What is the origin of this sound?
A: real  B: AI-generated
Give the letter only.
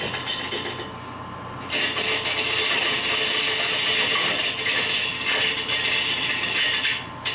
A